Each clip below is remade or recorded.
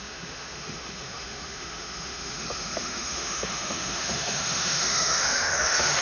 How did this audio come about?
remade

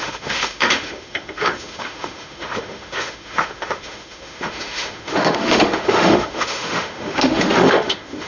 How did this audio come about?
remade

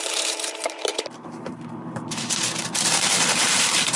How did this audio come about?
remade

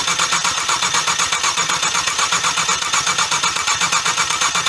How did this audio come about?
remade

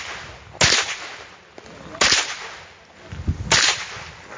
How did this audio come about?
recorded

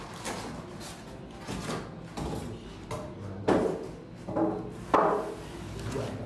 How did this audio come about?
recorded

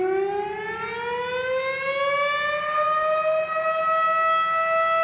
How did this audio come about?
recorded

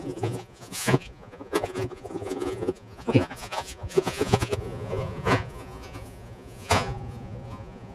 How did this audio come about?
remade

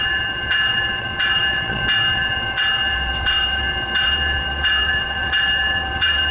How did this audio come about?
remade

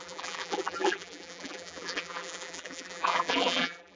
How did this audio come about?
remade